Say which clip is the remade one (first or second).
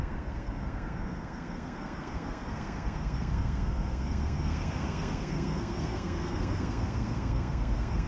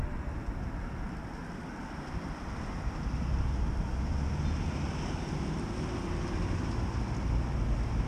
first